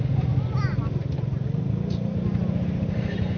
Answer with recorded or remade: recorded